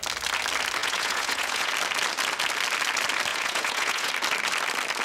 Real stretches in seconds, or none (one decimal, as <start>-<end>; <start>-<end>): 0.0-0.8; 1.7-3.3; 4.1-5.0